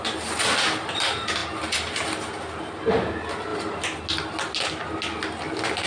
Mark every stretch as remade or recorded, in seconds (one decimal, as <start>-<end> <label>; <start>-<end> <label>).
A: 0.0-5.9 recorded